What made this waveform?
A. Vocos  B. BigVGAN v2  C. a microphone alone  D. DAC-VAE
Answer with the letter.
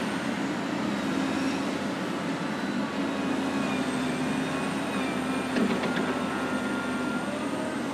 C